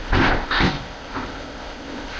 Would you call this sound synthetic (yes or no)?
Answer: yes